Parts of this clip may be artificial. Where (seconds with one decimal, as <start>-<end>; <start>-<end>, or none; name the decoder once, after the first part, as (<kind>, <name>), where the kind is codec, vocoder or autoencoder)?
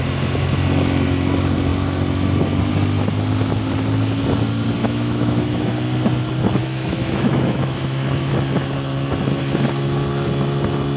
4.8-5.7 (autoencoder, DAC-VAE); 6.6-8.3